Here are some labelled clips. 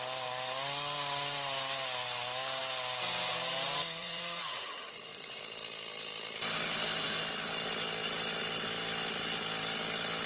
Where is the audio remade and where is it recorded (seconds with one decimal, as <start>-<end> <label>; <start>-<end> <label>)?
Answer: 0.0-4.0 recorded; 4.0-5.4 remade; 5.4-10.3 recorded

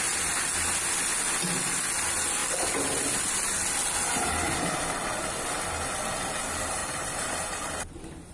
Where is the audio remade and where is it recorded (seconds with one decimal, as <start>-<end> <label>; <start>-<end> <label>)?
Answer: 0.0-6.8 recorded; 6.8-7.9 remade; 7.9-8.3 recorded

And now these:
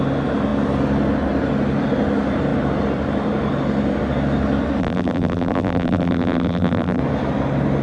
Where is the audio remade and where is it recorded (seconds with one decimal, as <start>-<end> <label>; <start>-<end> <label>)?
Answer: 0.0-4.8 recorded; 4.8-7.0 remade; 7.0-7.8 recorded

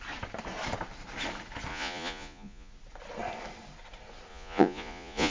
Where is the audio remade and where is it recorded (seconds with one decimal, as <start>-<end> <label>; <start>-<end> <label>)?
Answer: 0.0-1.7 recorded; 1.7-2.7 remade; 2.7-4.3 recorded; 4.3-5.3 remade

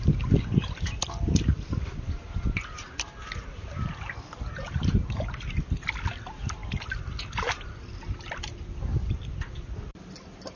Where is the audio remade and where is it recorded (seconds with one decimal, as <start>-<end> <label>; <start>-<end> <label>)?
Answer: 0.0-10.6 recorded

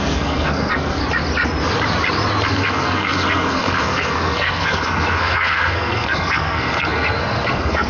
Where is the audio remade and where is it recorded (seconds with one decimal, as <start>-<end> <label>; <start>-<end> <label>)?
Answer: 0.0-1.0 remade; 1.0-2.5 recorded; 2.5-7.9 remade

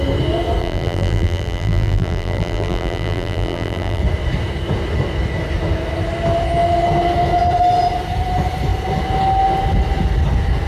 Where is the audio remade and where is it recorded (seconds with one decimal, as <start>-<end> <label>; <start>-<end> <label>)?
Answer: 0.0-0.6 recorded; 0.6-4.0 remade; 4.0-10.7 recorded